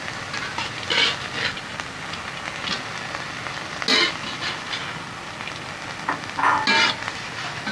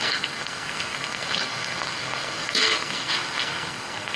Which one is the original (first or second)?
first